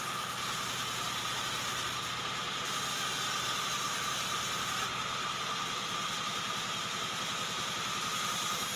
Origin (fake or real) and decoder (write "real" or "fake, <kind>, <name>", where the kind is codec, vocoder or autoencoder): real